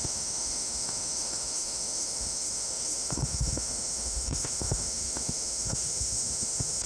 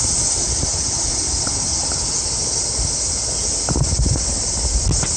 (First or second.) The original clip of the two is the second